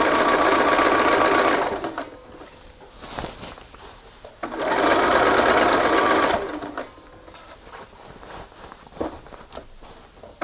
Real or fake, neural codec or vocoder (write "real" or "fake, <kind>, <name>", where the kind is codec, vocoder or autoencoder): real